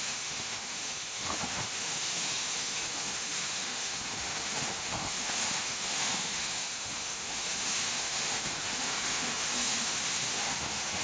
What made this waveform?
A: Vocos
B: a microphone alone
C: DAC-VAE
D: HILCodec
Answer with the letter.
C